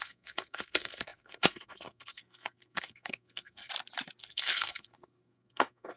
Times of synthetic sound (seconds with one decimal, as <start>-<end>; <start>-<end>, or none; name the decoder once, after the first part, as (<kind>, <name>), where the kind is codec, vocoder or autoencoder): 0.0-3.7 (codec, SNAC); 4.2-6.0